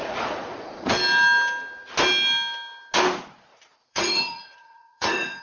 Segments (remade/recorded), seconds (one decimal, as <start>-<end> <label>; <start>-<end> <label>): 0.0-0.9 remade; 0.9-3.5 recorded; 3.5-5.4 remade